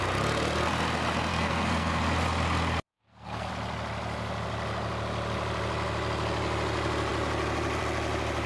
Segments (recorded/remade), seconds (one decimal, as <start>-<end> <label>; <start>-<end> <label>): 0.0-1.3 recorded; 1.3-2.0 remade; 2.0-2.9 recorded; 2.9-3.5 remade; 3.5-8.5 recorded